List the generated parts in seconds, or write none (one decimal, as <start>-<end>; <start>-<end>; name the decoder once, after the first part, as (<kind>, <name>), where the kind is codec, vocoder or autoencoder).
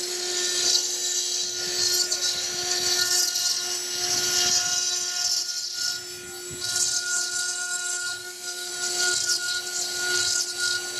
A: 8.2-8.7 (codec, SNAC)